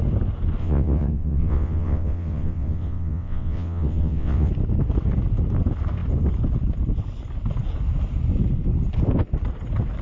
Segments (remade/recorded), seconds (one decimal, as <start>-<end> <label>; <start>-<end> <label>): 0.0-0.6 recorded; 0.6-4.5 remade; 4.5-10.0 recorded